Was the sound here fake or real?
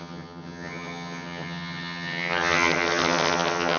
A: fake